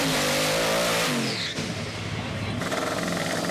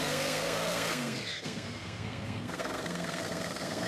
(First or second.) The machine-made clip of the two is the second